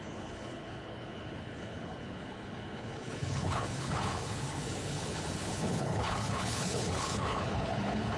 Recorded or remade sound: remade